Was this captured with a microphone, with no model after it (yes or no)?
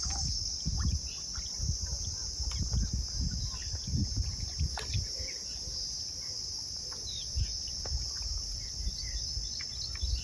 yes